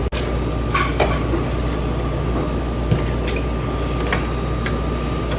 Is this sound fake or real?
real